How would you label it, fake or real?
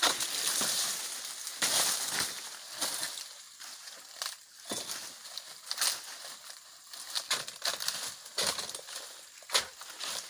real